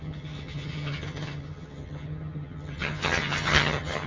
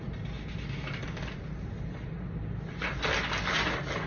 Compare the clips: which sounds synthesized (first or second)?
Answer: first